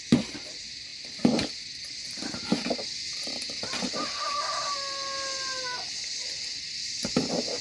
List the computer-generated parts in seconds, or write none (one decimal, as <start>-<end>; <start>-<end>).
none